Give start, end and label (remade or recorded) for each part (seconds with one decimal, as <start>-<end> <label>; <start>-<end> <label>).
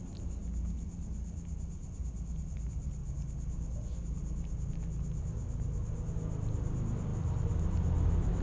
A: 0.0-8.4 recorded